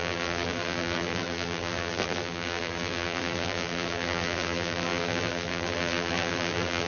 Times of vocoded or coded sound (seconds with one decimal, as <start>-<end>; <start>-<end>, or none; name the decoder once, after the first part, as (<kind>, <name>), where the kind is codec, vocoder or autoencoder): 0.0-6.9 (vocoder, BigVGAN v2)